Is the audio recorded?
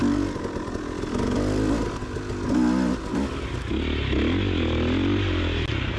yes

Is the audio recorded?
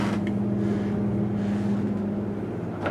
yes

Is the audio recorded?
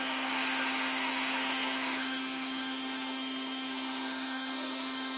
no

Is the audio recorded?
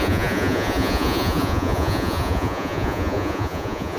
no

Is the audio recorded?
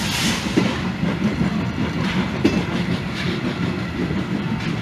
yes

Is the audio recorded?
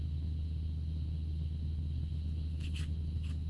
yes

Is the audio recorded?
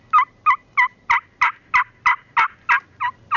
yes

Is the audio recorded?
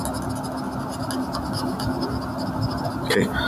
yes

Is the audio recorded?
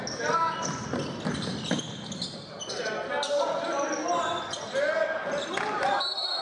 yes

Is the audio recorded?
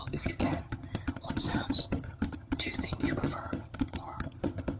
no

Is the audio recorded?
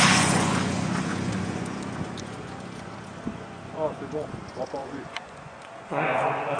no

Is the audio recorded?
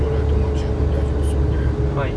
yes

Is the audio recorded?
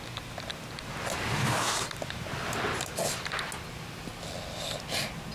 yes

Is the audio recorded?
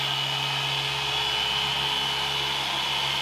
yes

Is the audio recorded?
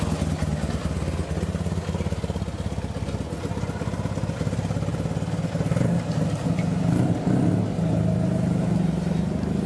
yes